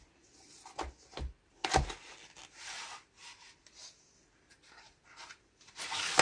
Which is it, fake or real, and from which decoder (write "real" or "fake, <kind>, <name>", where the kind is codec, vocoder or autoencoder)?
real